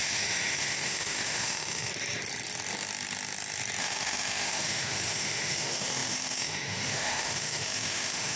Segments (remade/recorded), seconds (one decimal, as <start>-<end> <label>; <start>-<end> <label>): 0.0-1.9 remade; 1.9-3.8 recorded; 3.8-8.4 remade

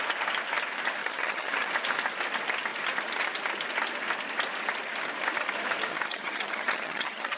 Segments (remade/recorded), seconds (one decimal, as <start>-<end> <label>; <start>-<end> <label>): 0.0-1.0 recorded; 1.0-1.7 remade; 1.7-5.9 recorded; 5.9-7.4 remade

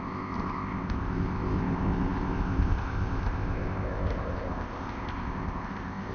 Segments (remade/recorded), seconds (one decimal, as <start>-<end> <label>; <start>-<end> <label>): 0.0-6.1 remade

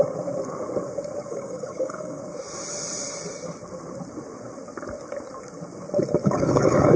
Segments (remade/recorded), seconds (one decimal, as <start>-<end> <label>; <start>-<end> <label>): 0.0-1.3 recorded; 1.3-2.2 remade; 2.2-6.2 recorded; 6.2-7.0 remade

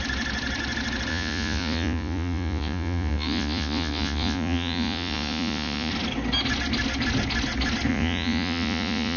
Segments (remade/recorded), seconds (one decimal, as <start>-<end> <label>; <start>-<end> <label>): 0.0-1.1 recorded; 1.1-5.9 remade; 5.9-7.9 recorded; 7.9-9.2 remade

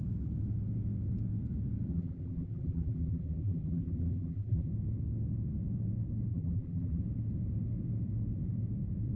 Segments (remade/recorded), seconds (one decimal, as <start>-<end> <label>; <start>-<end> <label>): 0.0-1.9 recorded; 1.9-4.7 remade; 4.7-6.3 recorded; 6.3-7.0 remade; 7.0-9.2 recorded

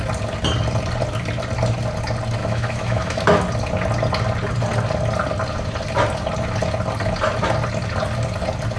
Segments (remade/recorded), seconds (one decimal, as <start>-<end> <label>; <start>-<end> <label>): 0.0-2.4 recorded; 2.4-3.2 remade; 3.2-8.8 recorded